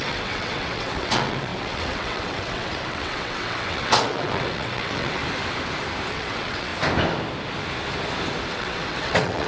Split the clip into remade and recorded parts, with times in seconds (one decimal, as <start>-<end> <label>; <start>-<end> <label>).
0.0-5.2 remade; 5.2-6.1 recorded; 6.1-6.7 remade; 6.7-8.5 recorded; 8.5-9.5 remade